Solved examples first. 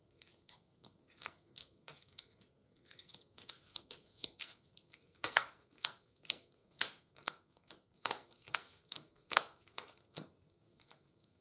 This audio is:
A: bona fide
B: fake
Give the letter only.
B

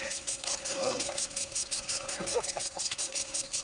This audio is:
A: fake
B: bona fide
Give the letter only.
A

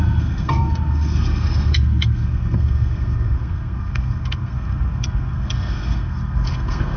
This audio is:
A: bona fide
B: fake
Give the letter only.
B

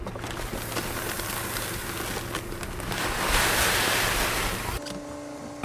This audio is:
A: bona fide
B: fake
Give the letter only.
A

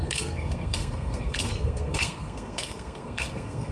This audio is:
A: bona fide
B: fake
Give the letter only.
B